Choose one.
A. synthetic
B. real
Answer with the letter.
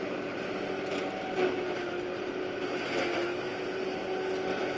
B